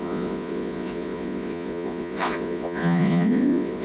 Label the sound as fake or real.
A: fake